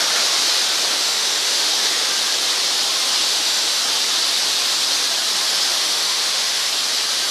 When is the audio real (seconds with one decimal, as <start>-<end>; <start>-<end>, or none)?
0.0-0.9; 2.1-3.2; 3.8-5.7; 6.7-7.3